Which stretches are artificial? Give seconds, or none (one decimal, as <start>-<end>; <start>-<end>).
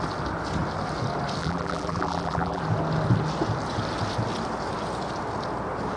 1.4-2.6